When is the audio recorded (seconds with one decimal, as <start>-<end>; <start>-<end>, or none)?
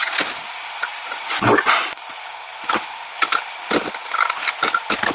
0.0-5.1